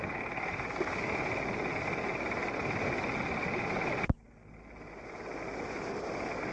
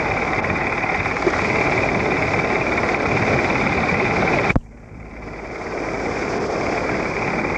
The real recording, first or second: first